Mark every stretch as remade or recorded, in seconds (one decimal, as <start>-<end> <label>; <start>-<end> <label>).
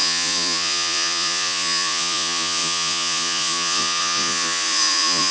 0.0-5.3 remade